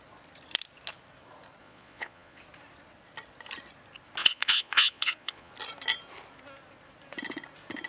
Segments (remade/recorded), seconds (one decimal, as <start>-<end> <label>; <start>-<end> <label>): 0.0-1.6 recorded; 1.6-2.4 remade; 2.4-4.2 recorded; 4.2-5.5 remade; 5.5-7.9 recorded